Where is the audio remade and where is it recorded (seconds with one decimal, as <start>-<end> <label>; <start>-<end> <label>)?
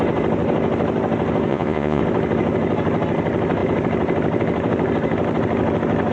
0.0-1.5 recorded; 1.5-2.0 remade; 2.0-6.1 recorded